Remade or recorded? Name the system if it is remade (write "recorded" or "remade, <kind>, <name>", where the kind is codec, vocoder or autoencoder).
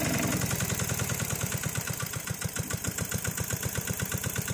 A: recorded